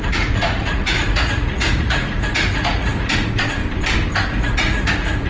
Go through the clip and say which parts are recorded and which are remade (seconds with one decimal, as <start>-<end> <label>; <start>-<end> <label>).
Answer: 0.0-3.6 remade; 3.6-4.4 recorded; 4.4-5.3 remade